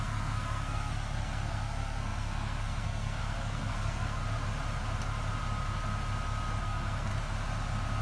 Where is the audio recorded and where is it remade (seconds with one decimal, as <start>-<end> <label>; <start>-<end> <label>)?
0.0-4.2 remade; 4.2-6.6 recorded; 6.6-7.1 remade; 7.1-8.0 recorded